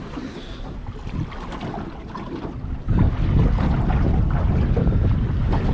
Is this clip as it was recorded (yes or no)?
yes